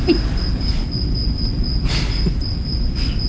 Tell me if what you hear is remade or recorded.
recorded